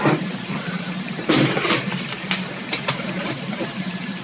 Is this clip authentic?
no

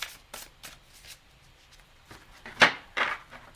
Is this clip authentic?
no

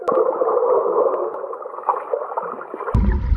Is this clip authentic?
yes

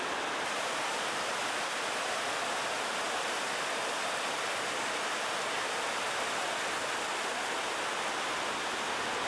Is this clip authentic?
yes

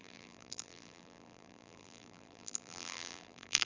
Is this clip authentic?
no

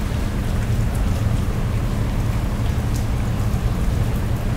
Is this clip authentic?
yes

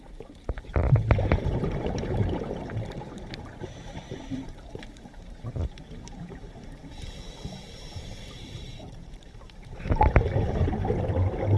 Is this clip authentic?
no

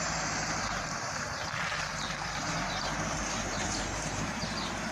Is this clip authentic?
no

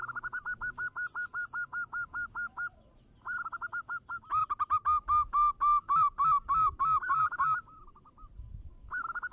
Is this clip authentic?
yes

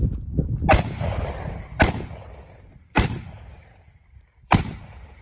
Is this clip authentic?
no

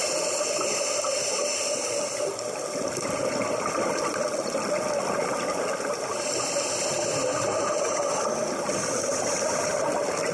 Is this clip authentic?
yes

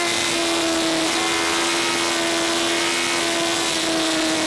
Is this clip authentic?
yes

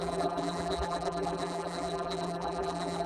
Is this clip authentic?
no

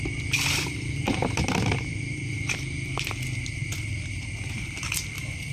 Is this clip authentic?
no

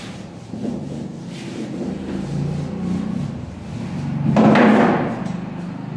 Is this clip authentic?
yes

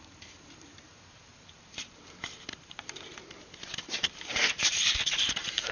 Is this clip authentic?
no